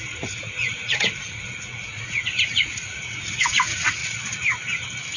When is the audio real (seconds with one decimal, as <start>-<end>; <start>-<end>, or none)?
4.0-5.2

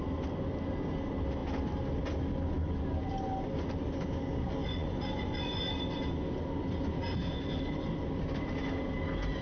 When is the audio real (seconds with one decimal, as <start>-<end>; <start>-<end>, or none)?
0.0-4.6; 5.6-9.4

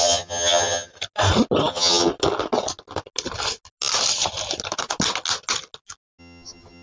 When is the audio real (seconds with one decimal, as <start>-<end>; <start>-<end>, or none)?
0.9-1.7; 2.1-6.2